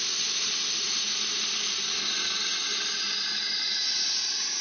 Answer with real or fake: real